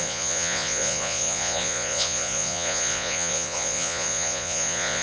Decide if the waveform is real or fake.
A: fake